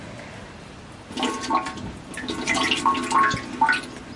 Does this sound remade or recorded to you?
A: recorded